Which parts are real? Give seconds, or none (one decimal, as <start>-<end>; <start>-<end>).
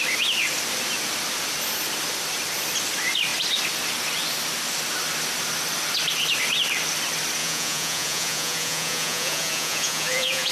0.0-7.4